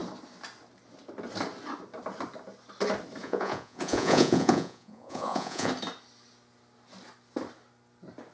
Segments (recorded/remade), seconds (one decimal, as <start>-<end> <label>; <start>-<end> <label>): 0.0-3.2 recorded; 3.2-5.7 remade; 5.7-8.3 recorded